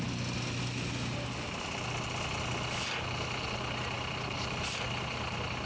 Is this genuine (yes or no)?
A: yes